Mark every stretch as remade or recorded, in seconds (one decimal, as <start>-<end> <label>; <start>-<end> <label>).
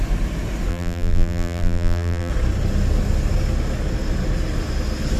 0.0-0.7 recorded; 0.7-2.3 remade; 2.3-5.2 recorded